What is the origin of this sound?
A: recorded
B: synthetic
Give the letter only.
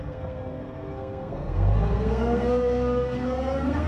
B